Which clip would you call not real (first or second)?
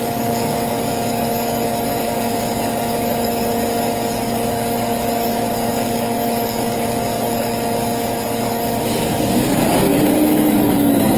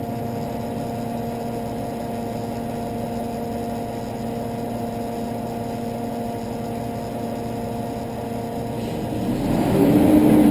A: first